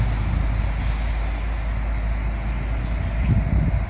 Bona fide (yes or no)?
yes